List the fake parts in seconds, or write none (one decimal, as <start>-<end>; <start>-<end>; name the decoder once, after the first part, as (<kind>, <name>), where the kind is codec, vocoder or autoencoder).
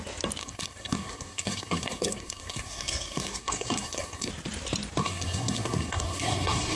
0.4-4.3 (codec, SNAC); 5.0-6.8